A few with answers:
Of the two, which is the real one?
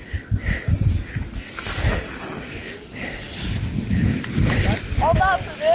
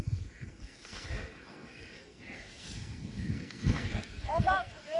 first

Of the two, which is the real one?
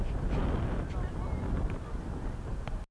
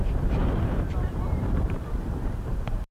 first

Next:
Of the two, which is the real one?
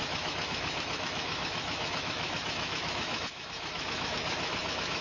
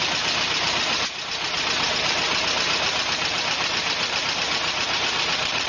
second